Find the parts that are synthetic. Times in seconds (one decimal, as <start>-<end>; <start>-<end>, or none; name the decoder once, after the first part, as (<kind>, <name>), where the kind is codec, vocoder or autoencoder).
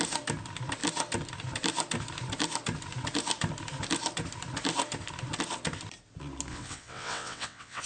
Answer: 6.5-7.9 (vocoder, WaveNeXt)